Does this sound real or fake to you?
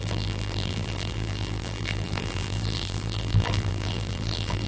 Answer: fake